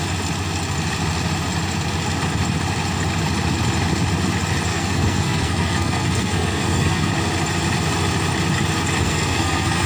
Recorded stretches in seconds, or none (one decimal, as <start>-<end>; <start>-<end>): 0.0-4.7; 7.1-9.0